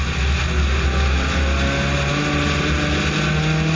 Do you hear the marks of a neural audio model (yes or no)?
no